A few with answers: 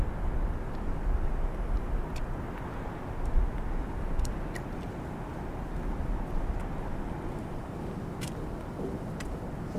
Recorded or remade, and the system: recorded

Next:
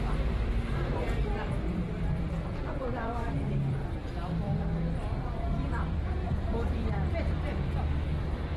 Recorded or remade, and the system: remade, vocoder, BigVGAN v2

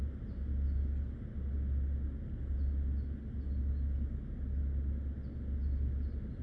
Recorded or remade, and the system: recorded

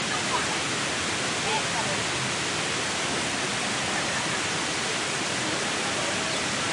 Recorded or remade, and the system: recorded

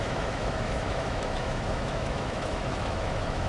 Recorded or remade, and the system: remade, autoencoder, DAC-VAE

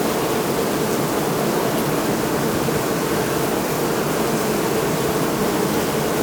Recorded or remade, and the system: recorded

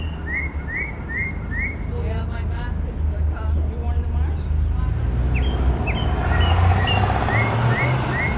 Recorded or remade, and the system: recorded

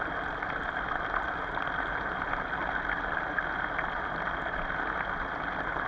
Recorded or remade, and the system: recorded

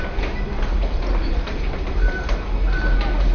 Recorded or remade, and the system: recorded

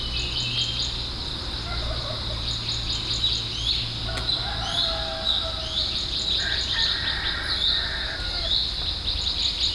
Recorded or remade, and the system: recorded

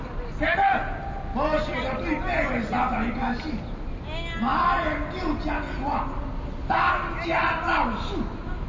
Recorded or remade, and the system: recorded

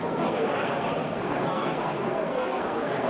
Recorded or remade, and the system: remade, codec, SNAC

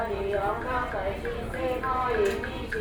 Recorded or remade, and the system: recorded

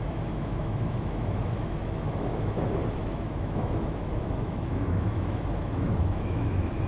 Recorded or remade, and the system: remade, autoencoder, DAC-VAE